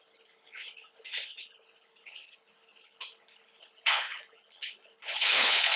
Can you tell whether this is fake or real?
fake